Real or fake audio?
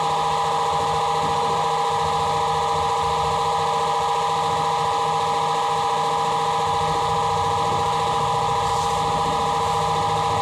real